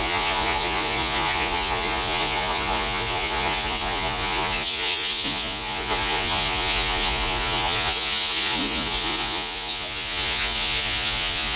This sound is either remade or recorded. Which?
remade